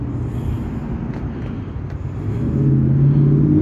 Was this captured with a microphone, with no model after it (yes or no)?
yes